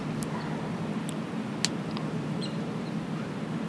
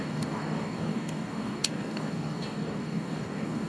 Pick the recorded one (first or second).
first